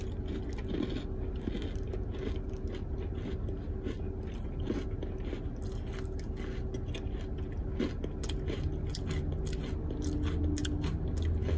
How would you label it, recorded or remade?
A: recorded